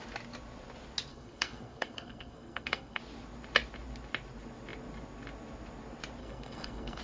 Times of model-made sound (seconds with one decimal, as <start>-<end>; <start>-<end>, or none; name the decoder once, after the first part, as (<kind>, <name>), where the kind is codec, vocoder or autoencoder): 1.1-3.0 (codec, SNAC); 6.2-7.0